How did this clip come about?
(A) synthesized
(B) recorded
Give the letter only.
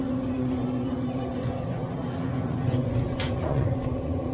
A